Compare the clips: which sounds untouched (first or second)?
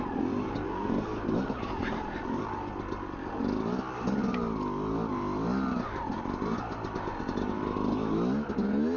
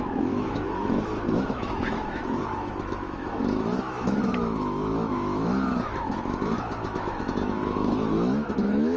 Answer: first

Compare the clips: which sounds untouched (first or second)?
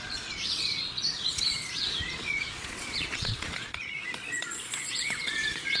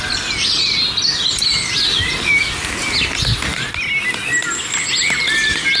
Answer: second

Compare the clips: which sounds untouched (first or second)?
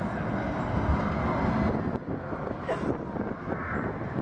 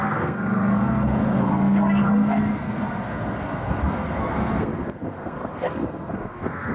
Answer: first